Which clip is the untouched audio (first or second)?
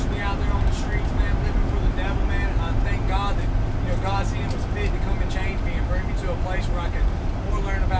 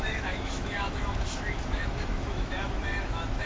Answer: first